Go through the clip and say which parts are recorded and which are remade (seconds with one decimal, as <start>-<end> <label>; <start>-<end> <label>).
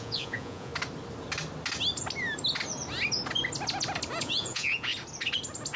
0.0-0.7 remade; 0.7-4.2 recorded; 4.2-4.9 remade; 4.9-5.8 recorded